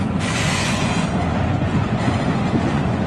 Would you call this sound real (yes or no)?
no